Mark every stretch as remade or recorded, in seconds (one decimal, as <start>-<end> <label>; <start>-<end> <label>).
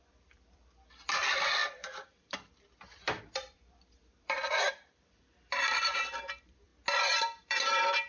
0.0-6.7 remade; 6.7-7.2 recorded; 7.2-8.1 remade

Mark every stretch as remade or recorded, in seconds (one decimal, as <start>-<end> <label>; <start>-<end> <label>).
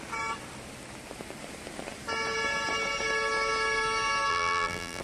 0.0-4.3 recorded; 4.3-5.0 remade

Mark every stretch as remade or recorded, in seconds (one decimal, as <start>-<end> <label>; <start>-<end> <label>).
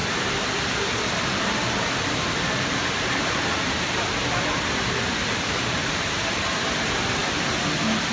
0.0-4.1 remade; 4.1-5.8 recorded; 5.8-6.4 remade; 6.4-8.1 recorded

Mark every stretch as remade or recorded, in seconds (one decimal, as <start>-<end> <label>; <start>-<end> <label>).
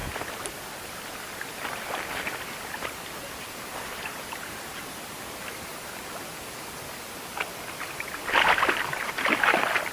0.0-3.4 remade; 3.4-7.5 recorded; 7.5-9.2 remade; 9.2-9.9 recorded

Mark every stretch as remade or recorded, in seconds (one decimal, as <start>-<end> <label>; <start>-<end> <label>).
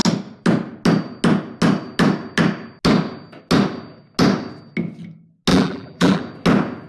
0.0-5.5 recorded; 5.5-6.2 remade; 6.2-6.9 recorded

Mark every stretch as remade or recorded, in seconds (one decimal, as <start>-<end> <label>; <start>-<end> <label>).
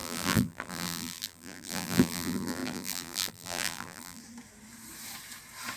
0.0-4.2 remade; 4.2-5.8 recorded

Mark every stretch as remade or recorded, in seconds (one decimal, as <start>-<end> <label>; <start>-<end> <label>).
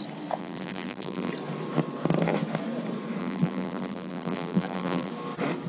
0.0-0.4 recorded; 0.4-1.3 remade; 1.3-3.2 recorded; 3.2-5.1 remade; 5.1-5.7 recorded